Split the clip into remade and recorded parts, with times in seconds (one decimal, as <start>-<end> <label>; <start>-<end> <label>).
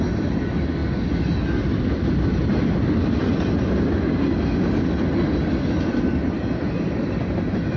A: 0.0-7.8 recorded